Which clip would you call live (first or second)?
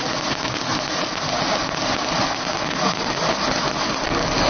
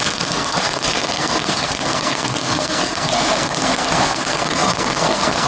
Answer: first